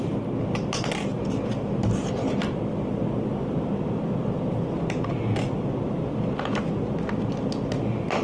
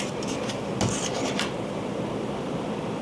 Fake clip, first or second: second